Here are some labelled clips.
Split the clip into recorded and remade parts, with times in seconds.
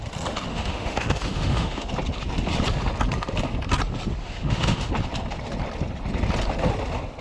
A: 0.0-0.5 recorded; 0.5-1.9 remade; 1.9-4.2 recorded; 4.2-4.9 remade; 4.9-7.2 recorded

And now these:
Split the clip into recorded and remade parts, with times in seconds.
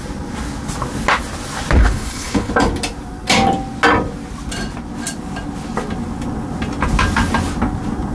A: 0.0-1.8 recorded; 1.8-2.5 remade; 2.5-8.1 recorded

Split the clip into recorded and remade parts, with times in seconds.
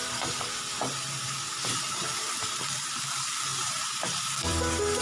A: 0.0-3.0 remade; 3.0-3.5 recorded; 3.5-5.0 remade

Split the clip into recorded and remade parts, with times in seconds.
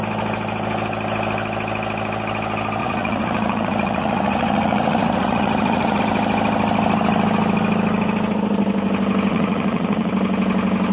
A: 0.0-2.8 recorded; 2.8-6.0 remade; 6.0-9.3 recorded; 9.3-10.1 remade; 10.1-10.9 recorded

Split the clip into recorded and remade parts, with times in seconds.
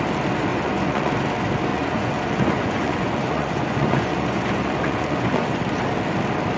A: 0.0-0.5 recorded; 0.5-1.1 remade; 1.1-1.7 recorded; 1.7-5.6 remade; 5.6-6.6 recorded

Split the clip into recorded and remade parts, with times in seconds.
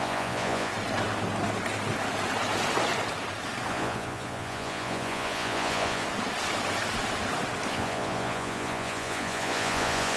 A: 0.0-0.7 remade; 0.7-3.7 recorded; 3.7-6.0 remade; 6.0-7.7 recorded; 7.7-10.2 remade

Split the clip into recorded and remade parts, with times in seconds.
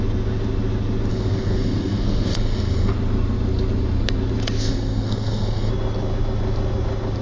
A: 0.0-1.1 recorded; 1.1-2.9 remade; 2.9-4.6 recorded; 4.6-5.7 remade; 5.7-7.2 recorded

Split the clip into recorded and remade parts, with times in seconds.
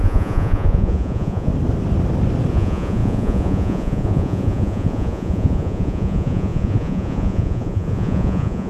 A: 0.0-1.5 remade; 1.5-2.5 recorded; 2.5-8.7 remade